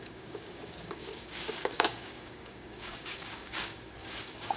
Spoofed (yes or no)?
yes